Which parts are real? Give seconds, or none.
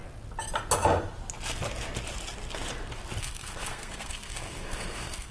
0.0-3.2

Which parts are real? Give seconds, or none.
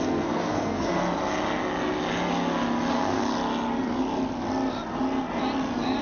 1.0-2.9; 3.3-6.0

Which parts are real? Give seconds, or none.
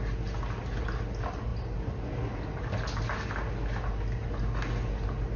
0.0-5.4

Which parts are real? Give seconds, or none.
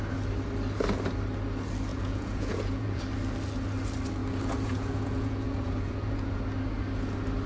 0.0-1.9; 3.0-4.2; 6.4-7.5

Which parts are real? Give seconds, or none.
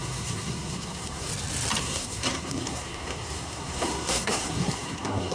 1.3-1.8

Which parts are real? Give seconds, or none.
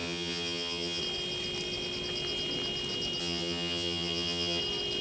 1.0-3.2; 4.6-5.0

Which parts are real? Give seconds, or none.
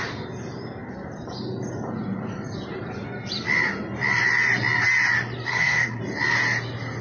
0.0-5.5; 6.0-7.0